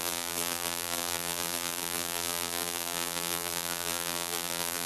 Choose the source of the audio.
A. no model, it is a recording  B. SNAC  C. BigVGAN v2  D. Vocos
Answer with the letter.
C